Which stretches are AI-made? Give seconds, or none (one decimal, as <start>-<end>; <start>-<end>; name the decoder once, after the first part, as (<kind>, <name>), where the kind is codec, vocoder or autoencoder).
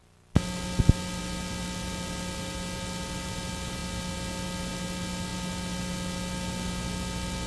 none